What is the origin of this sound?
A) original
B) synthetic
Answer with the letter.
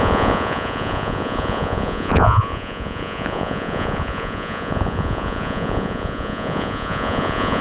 B